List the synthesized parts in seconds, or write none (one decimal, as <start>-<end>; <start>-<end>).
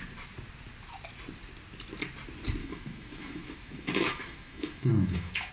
2.6-5.5